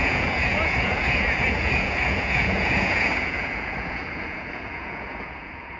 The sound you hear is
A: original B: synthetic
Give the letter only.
B